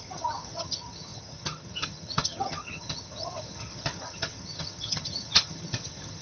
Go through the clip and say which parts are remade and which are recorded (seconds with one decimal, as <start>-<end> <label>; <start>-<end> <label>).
0.0-6.2 remade